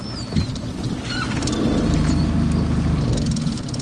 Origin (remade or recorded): recorded